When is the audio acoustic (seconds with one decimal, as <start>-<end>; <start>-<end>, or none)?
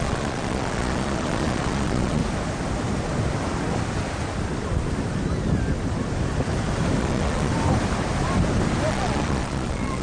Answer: 2.2-7.0; 7.5-8.9